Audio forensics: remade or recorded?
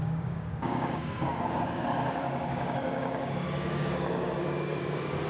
remade